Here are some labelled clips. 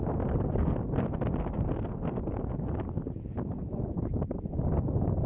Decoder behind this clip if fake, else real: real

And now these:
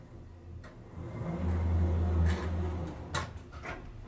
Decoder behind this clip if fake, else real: real